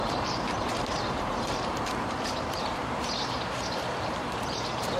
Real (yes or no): no